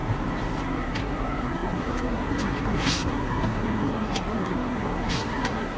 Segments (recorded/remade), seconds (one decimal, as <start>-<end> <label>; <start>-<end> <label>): 0.0-0.6 recorded; 0.6-5.8 remade